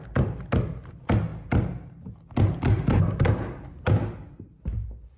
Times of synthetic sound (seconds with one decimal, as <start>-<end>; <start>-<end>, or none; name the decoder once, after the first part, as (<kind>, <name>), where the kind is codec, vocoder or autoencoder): none

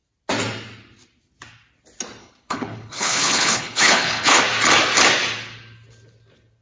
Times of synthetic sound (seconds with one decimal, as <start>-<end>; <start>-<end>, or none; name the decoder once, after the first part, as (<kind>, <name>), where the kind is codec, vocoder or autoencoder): 2.2-4.4 (codec, HILCodec)

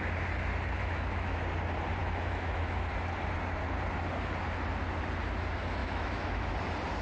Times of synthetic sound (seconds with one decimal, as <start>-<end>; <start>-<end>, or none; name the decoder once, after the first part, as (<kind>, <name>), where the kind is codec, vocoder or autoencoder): 0.8-1.4 (autoencoder, DAC-VAE); 2.0-2.9; 5.8-6.5

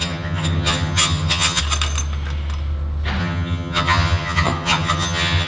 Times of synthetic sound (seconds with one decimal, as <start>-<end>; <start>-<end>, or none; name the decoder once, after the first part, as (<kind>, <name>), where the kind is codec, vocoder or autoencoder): 0.0-1.6 (vocoder, HiFi-GAN); 3.2-5.5

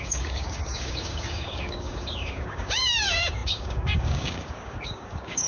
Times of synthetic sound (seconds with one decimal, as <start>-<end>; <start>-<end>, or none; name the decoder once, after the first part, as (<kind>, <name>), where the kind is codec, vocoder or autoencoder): 0.0-5.5 (codec, DAC)

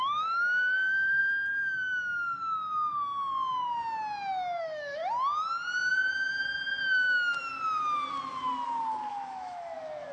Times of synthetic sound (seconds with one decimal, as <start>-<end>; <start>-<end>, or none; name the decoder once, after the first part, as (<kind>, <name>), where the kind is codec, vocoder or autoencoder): 0.0-1.2 (autoencoder, DAC-VAE); 4.6-5.0; 9.1-10.1

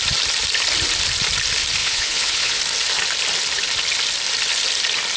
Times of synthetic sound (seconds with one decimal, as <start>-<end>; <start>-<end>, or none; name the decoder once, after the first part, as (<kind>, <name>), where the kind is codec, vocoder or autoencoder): 1.8-2.6 (vocoder, Vocos)

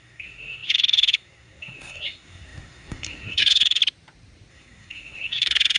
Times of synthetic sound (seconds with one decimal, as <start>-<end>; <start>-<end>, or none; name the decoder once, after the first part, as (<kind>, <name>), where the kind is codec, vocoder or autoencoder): 0.0-3.8 (codec, SNAC); 4.5-5.8